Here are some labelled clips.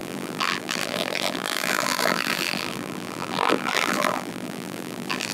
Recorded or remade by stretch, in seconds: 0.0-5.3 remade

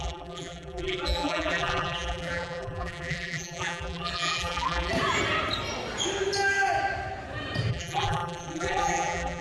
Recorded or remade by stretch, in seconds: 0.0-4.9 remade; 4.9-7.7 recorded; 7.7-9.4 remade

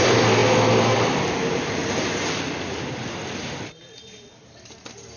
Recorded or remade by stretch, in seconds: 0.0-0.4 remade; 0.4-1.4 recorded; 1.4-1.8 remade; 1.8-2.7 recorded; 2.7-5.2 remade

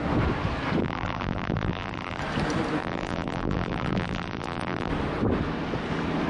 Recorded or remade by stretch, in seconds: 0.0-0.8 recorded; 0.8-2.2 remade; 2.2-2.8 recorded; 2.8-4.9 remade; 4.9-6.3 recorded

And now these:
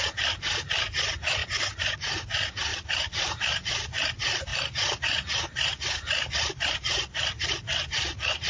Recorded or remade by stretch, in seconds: 0.0-2.7 recorded; 2.7-3.4 remade; 3.4-4.5 recorded; 4.5-5.4 remade; 5.4-8.5 recorded

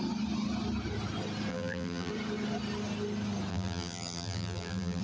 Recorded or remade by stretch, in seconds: 0.0-1.5 recorded; 1.5-2.1 remade; 2.1-3.5 recorded; 3.5-5.0 remade

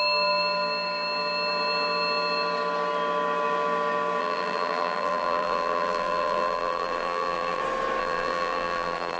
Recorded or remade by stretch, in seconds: 0.0-4.2 recorded; 4.2-7.6 remade; 7.6-8.0 recorded; 8.0-9.2 remade